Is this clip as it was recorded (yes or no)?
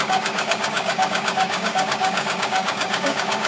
no